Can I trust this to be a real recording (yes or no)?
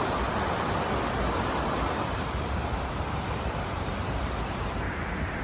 no